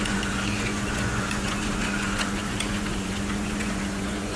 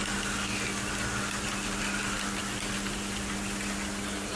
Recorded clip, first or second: second